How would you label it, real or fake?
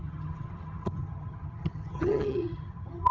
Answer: fake